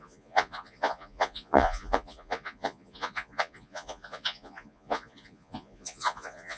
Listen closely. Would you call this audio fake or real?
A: fake